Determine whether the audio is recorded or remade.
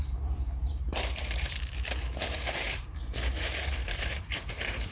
remade